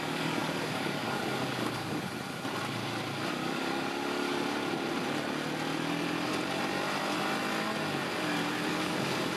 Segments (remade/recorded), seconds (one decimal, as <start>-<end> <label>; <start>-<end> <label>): 0.0-2.1 remade; 2.1-3.3 recorded; 3.3-4.3 remade; 4.3-8.7 recorded; 8.7-9.4 remade